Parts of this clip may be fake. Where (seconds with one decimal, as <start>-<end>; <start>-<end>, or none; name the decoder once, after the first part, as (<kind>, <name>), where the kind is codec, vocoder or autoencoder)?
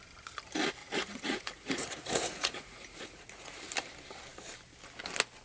0.8-3.6 (vocoder, Vocos)